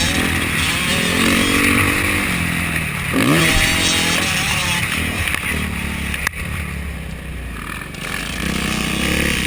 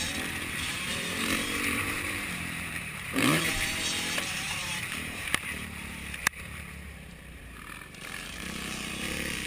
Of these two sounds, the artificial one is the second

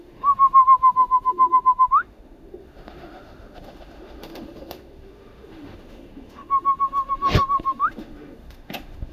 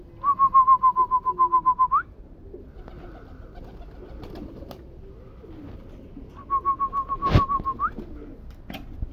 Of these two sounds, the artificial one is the first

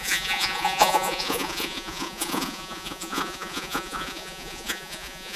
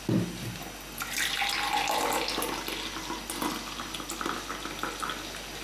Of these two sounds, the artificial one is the first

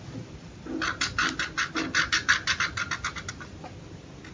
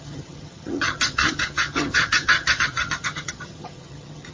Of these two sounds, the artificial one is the second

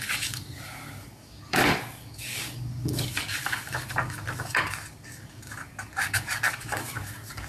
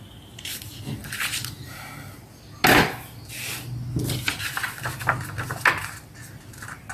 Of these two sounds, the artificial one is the first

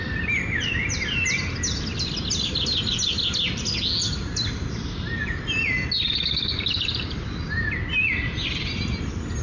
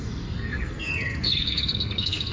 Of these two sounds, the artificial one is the second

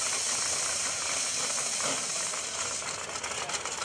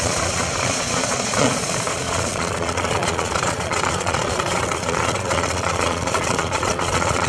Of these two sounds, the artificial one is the second